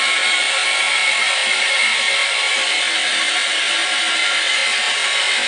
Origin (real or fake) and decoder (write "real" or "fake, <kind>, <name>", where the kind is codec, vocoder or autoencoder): fake, vocoder, BigVGAN v2